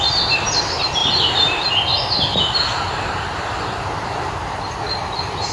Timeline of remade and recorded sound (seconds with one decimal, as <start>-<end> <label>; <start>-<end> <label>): 0.0-1.0 recorded; 1.0-4.3 remade; 4.3-5.5 recorded